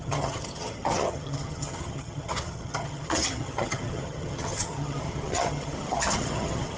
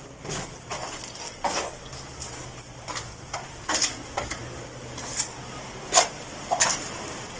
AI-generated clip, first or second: first